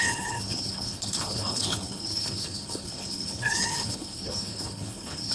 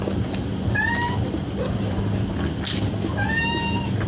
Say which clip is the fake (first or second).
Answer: first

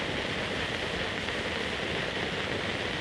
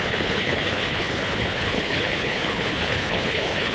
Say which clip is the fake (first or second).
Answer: second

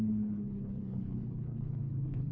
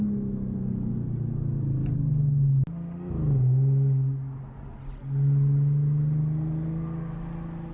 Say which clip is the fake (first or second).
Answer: first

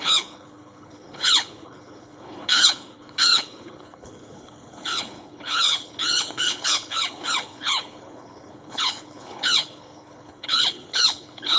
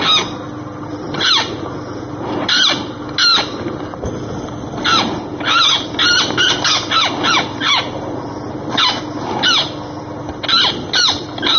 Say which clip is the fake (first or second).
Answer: first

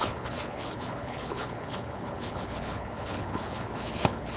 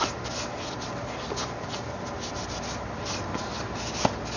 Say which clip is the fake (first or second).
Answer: first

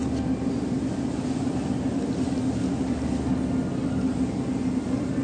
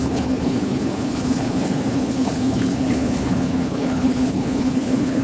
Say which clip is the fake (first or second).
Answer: second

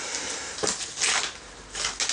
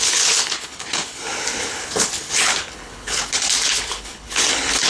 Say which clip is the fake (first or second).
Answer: second